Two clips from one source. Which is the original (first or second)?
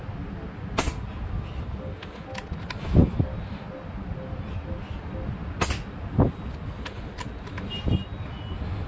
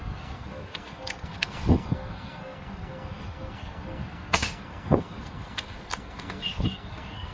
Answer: first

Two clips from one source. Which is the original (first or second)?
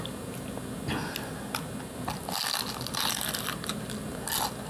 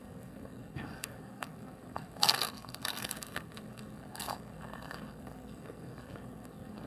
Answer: first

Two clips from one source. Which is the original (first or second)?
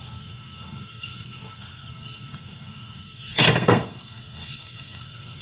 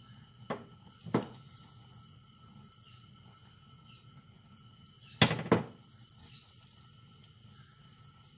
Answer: second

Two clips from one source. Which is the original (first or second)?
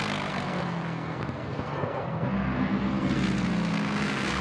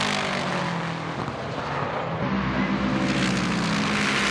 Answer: second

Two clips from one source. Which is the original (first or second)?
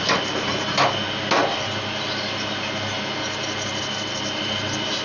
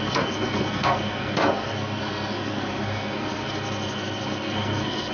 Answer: first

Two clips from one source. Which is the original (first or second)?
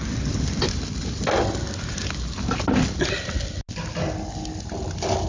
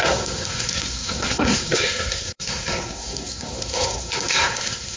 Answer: first